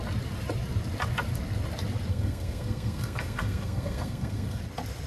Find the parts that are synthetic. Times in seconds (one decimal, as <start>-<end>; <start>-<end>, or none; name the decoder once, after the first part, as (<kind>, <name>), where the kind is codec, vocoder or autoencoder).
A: 2.1-4.6 (codec, SNAC)